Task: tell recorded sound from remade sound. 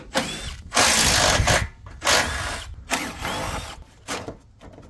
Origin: recorded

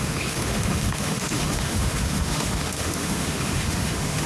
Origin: remade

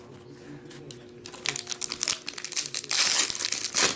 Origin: recorded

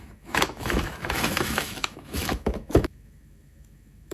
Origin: remade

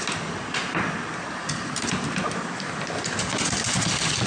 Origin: recorded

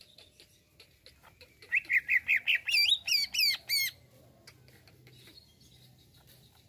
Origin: recorded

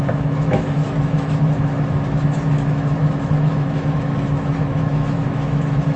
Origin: remade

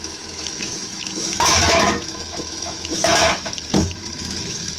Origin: remade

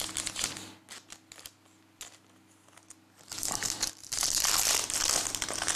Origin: recorded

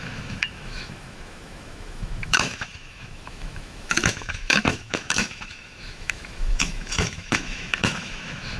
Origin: remade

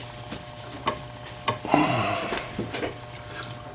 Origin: recorded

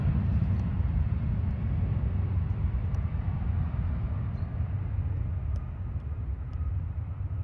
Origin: recorded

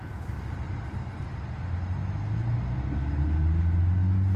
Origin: recorded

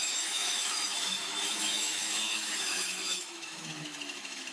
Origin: remade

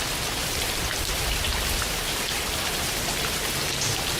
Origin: recorded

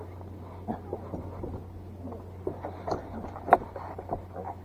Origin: recorded